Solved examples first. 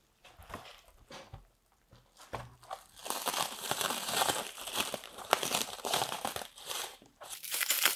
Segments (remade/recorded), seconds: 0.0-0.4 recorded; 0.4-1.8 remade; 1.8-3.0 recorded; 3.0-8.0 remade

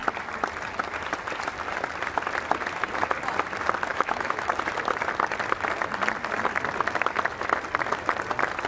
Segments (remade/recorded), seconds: 0.0-3.9 recorded; 3.9-4.5 remade; 4.5-8.7 recorded

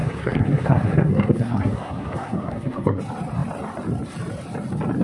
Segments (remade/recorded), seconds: 0.0-3.0 remade; 3.0-5.0 recorded

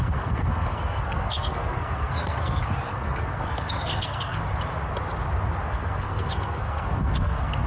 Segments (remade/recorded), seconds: 0.0-4.4 remade; 4.4-5.7 recorded; 5.7-7.7 remade

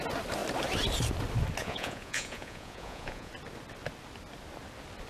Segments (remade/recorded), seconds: 0.0-1.6 recorded; 1.6-3.3 remade; 3.3-5.1 recorded

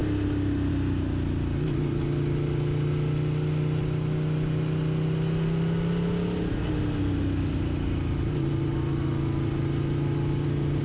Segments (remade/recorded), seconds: 0.0-10.8 recorded